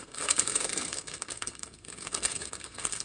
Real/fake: fake